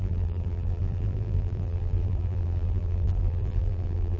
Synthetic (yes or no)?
yes